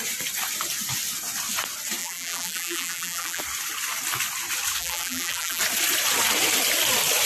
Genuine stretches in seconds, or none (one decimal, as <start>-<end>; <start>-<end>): 0.0-2.0; 3.4-4.8; 5.6-7.2

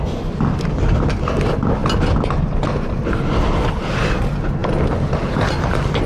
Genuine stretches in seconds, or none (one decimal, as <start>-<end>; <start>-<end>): 0.0-6.1

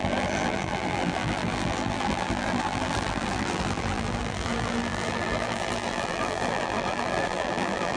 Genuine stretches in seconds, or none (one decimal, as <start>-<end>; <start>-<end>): none

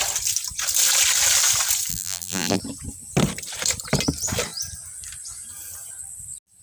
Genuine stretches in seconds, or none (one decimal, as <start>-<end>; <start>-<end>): 0.0-1.9; 2.6-6.6

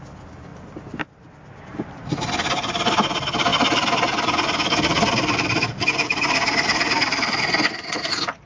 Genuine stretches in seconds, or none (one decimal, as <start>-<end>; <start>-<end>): 0.0-1.7; 2.3-3.5; 8.1-8.5

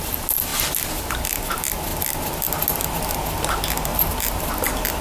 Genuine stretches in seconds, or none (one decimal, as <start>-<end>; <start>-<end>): 0.0-3.9; 4.5-5.0

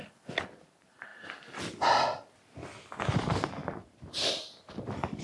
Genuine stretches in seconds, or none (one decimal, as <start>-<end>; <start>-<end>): 0.0-5.2